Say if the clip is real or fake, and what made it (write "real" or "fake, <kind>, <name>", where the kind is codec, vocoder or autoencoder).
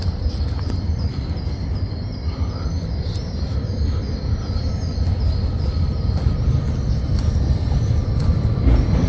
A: real